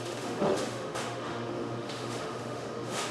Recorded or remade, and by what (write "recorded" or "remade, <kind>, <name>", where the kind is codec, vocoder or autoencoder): remade, autoencoder, DAC-VAE